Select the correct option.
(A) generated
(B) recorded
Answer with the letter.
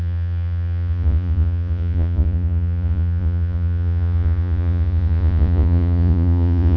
A